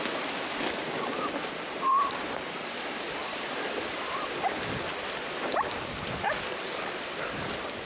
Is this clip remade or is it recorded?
remade